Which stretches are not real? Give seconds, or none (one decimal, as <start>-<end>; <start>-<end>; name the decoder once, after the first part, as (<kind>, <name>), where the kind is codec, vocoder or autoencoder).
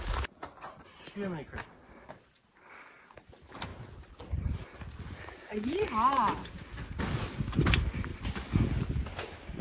none